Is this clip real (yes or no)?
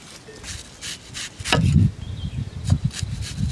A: yes